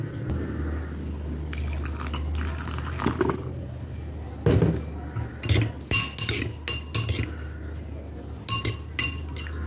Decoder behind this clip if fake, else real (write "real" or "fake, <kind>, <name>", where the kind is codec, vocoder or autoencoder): real